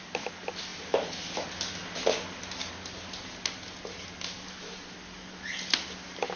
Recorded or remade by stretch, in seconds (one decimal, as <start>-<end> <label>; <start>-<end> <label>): 0.0-6.4 recorded